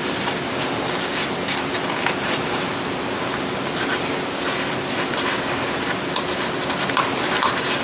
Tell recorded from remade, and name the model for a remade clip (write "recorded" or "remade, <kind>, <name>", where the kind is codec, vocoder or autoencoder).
recorded